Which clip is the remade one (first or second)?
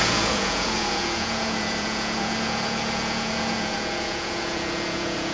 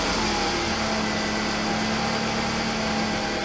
first